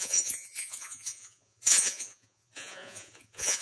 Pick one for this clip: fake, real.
fake